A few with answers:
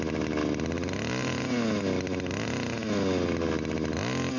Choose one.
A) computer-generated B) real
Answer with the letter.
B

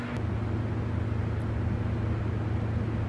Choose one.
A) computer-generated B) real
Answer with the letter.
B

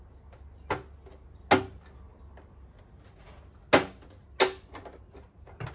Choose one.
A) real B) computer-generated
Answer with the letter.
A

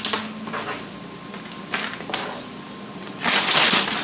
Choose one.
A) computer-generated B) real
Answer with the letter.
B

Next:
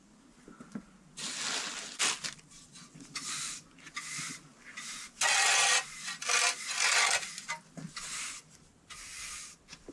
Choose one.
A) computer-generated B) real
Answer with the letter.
B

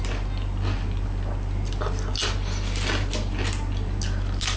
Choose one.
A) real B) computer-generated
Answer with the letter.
A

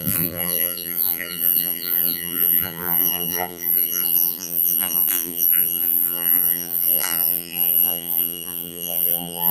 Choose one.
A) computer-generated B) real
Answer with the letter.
A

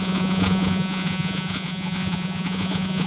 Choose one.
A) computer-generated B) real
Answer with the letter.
A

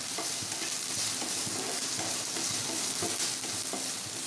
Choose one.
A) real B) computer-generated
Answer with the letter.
A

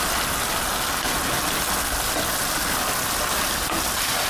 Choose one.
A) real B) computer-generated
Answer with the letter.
A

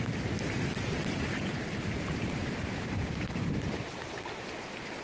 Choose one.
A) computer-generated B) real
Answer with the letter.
A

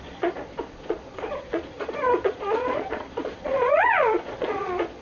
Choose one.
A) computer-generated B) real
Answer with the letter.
A